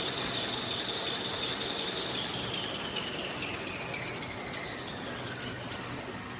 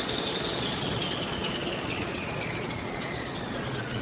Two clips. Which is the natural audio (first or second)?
first